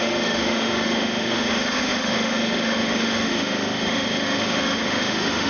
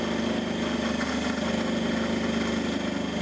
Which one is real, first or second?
second